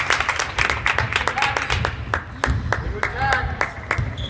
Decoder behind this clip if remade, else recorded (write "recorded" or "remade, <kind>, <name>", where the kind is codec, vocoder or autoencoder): recorded